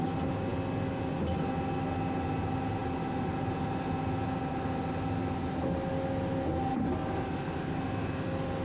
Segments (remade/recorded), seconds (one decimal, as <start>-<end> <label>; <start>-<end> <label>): 0.0-8.6 recorded